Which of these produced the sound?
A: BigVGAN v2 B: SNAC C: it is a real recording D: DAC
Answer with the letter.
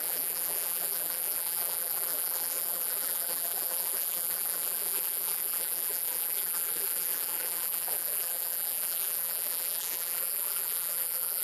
A